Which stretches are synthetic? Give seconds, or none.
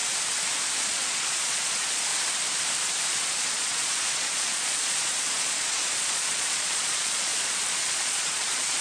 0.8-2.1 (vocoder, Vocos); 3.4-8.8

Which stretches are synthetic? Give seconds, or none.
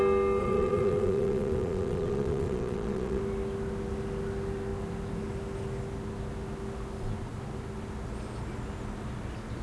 0.4-3.2 (vocoder, Vocos)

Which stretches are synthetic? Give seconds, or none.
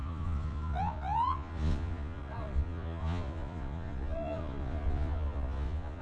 0.0-6.0 (vocoder, Vocos)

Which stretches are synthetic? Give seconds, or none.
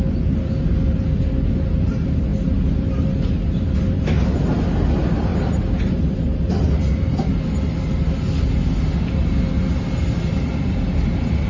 none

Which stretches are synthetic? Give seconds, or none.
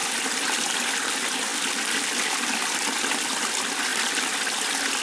none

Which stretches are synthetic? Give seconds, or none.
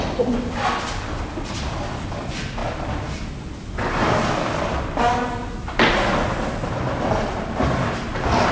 none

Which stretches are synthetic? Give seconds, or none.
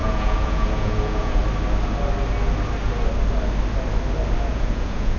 0.0-1.4 (vocoder, Vocos); 4.5-5.2